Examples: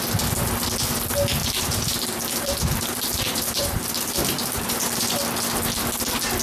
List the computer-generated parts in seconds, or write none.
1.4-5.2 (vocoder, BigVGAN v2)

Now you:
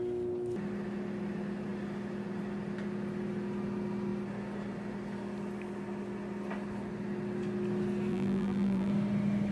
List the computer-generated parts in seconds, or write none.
8.1-8.9 (vocoder, BigVGAN v2)

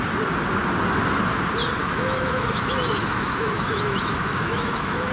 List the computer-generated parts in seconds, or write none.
1.8-5.1 (autoencoder, DAC-VAE)

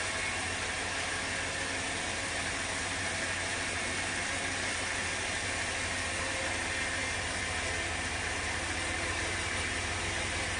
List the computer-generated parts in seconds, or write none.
none